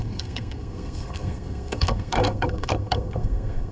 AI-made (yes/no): yes